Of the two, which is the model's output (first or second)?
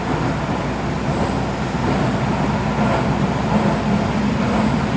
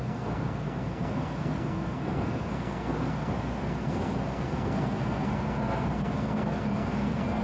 second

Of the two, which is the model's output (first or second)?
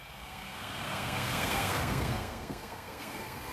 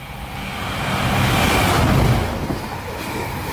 first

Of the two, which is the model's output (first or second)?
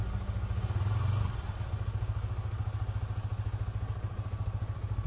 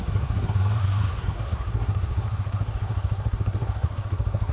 second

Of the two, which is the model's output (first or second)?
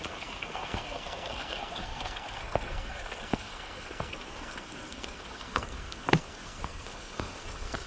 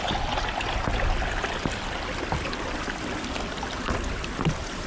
first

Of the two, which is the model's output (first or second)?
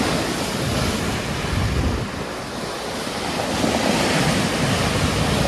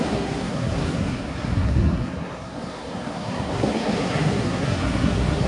second